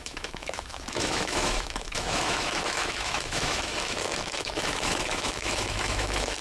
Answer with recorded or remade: remade